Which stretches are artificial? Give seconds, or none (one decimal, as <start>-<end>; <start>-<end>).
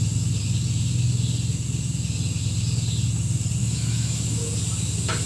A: 3.6-4.5